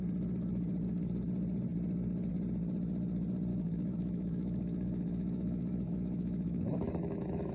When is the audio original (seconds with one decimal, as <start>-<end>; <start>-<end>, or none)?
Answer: 0.0-3.5